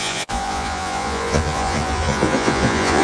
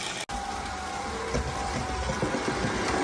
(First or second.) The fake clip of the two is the first